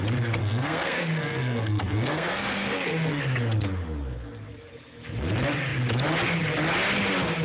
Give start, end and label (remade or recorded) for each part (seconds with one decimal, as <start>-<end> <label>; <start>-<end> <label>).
0.0-0.4 recorded; 0.4-3.2 remade; 3.2-7.4 recorded